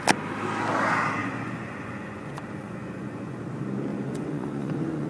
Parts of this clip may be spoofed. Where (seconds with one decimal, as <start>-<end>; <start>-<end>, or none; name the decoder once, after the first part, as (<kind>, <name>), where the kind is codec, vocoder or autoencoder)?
1.2-3.4 (vocoder, Vocos); 3.9-5.1